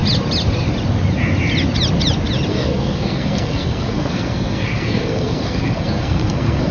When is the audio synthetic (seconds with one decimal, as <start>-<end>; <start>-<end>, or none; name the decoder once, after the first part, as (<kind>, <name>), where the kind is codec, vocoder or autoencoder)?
2.5-6.7 (codec, SNAC)